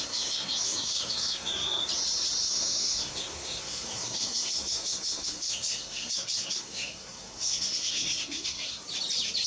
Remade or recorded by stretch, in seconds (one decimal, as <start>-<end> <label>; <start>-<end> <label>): 0.0-1.8 remade; 1.8-2.4 recorded; 2.4-8.8 remade; 8.8-9.5 recorded